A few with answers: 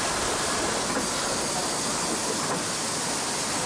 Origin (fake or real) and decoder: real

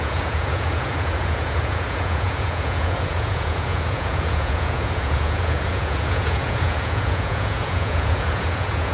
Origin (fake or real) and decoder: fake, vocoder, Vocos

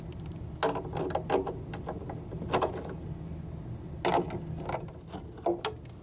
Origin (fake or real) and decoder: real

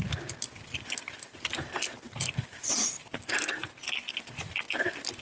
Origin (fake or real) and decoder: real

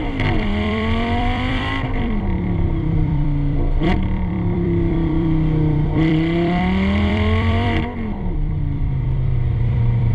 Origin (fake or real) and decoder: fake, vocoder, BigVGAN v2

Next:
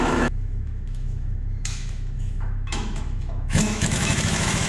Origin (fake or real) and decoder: fake, autoencoder, DAC-VAE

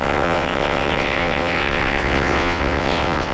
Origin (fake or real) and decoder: fake, vocoder, WaveNeXt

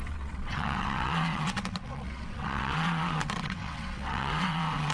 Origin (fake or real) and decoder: fake, vocoder, WaveNeXt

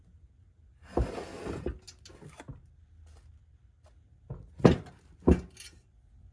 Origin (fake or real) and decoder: real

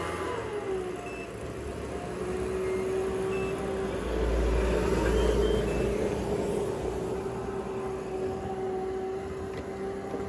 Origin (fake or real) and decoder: real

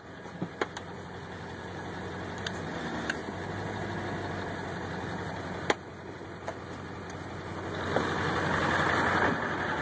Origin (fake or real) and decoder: real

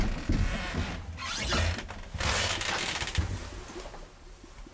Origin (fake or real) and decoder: real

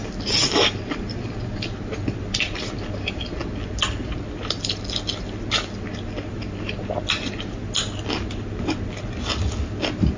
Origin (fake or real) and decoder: real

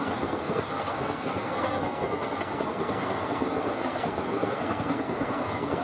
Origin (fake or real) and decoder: fake, codec, SNAC